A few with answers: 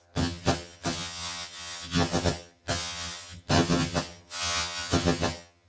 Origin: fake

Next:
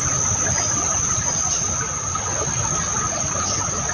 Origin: real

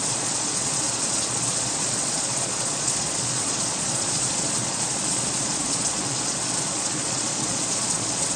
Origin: fake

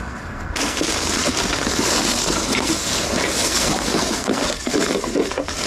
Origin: fake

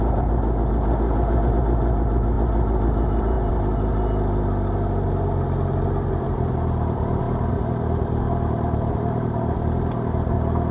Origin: real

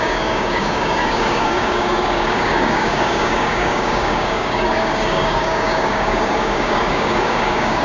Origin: fake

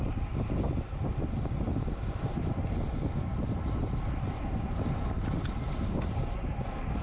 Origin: real